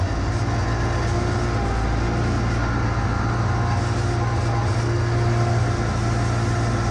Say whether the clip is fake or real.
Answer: real